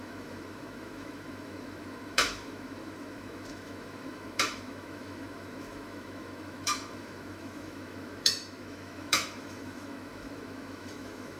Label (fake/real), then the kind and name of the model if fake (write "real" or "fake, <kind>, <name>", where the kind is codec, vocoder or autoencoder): fake, autoencoder, DAC-VAE